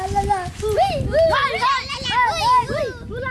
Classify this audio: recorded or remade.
recorded